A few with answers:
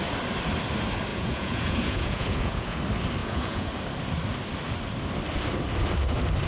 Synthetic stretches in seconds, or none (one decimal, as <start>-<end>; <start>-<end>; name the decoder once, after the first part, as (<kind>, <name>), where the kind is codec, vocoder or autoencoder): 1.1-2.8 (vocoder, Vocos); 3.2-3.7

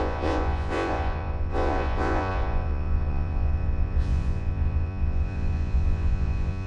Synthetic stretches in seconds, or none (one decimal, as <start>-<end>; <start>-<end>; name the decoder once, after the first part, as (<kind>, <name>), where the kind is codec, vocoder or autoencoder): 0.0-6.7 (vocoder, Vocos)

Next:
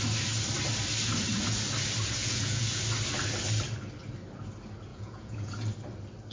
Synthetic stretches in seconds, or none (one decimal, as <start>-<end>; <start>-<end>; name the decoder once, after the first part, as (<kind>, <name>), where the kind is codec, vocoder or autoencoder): 2.2-2.8 (vocoder, Vocos); 4.9-5.5

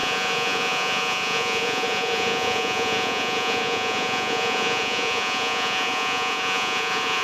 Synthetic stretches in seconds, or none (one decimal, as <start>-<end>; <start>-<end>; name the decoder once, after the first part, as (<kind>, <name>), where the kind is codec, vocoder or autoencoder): 0.0-7.2 (vocoder, Vocos)

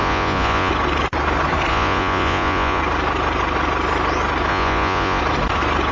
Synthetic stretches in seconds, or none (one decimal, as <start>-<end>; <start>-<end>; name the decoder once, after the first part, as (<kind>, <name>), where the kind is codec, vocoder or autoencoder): 0.0-0.7 (vocoder, Vocos); 1.7-2.8; 4.5-5.2

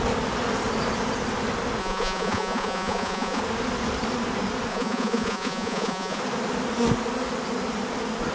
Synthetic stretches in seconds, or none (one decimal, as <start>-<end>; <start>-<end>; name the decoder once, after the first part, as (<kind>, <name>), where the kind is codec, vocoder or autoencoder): 1.8-3.4 (vocoder, Vocos); 4.7-6.2

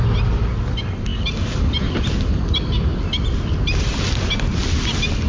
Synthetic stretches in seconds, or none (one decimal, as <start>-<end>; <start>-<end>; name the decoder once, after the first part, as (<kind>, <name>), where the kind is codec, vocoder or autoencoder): none